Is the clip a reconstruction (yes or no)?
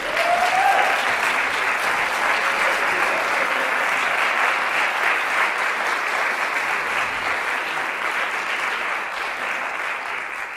no